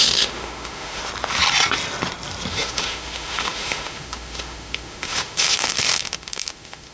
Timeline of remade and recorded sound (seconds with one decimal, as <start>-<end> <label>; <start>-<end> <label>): 0.0-1.0 remade; 1.0-2.5 recorded; 2.5-6.9 remade